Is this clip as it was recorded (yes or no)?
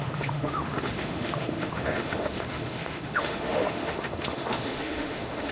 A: no